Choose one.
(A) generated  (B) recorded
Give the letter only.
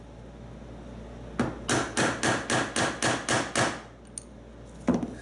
B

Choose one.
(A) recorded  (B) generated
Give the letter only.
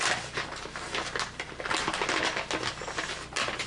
A